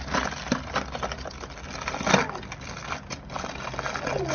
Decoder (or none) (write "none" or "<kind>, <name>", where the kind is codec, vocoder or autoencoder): none